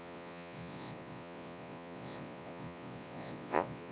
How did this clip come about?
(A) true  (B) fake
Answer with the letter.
B